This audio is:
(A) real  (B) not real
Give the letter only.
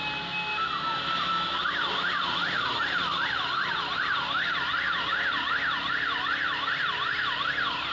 A